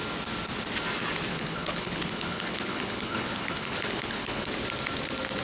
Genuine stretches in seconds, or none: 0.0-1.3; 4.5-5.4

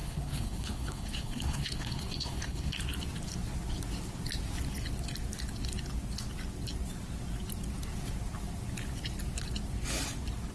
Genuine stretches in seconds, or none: 2.7-10.5